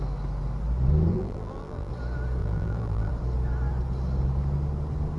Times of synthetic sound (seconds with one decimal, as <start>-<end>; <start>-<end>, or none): 1.1-1.9; 2.4-3.1